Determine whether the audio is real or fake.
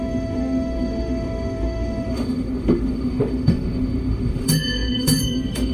fake